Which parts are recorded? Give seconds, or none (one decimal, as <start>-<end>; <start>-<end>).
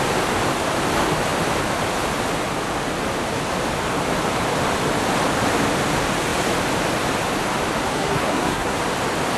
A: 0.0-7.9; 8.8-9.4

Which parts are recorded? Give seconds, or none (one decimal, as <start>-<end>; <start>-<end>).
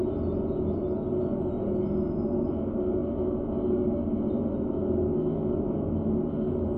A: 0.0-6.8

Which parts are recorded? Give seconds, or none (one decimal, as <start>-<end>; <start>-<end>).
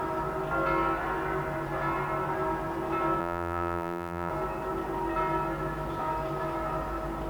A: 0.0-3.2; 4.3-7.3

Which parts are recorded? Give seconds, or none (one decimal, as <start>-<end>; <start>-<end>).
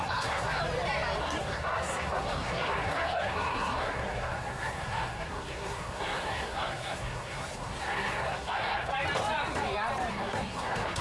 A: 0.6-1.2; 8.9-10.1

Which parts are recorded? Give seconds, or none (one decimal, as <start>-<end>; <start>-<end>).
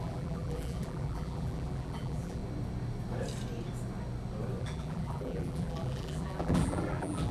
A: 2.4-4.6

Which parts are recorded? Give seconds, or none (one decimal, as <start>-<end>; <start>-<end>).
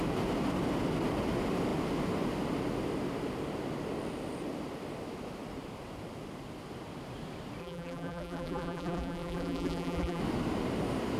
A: 0.0-7.6; 10.2-11.2